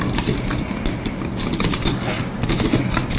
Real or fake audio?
real